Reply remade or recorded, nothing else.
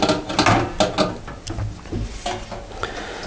recorded